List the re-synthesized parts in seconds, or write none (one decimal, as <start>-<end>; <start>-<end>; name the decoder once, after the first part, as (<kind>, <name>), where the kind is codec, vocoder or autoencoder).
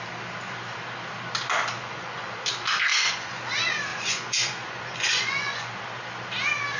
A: 1.8-2.3 (vocoder, Vocos); 2.9-3.4; 3.9-5.7